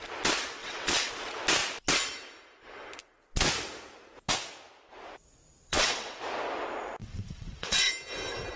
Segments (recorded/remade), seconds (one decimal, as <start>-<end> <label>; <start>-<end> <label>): 0.0-0.6 recorded; 0.6-1.1 remade; 1.1-5.7 recorded; 5.7-6.2 remade; 6.2-7.0 recorded; 7.0-7.9 remade; 7.9-8.6 recorded